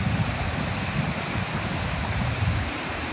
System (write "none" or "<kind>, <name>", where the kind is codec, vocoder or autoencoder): none